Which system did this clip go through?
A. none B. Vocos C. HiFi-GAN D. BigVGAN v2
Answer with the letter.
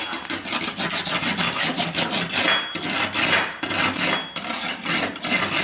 A